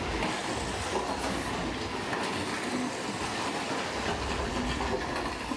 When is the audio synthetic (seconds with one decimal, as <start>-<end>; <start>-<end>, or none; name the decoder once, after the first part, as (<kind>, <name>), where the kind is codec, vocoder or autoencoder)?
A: none